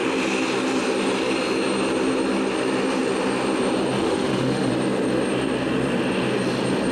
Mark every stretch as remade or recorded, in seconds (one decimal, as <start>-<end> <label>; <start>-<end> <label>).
0.0-4.0 recorded; 4.0-4.7 remade; 4.7-6.9 recorded